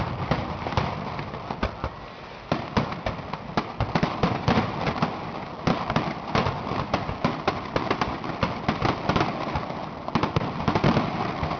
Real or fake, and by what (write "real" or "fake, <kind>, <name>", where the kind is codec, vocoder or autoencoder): real